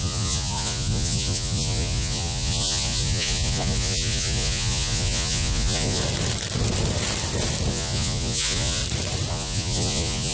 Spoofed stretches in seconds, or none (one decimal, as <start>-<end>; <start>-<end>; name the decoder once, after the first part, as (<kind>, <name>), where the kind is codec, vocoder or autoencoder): 0.0-6.0 (vocoder, Vocos); 7.7-8.8; 9.3-10.3